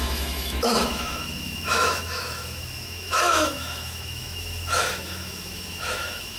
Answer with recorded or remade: remade